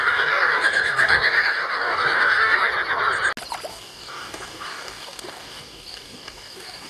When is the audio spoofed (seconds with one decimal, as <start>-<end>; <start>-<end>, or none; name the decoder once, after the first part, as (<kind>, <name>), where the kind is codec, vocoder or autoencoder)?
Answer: 0.0-2.7 (codec, DAC); 3.7-6.9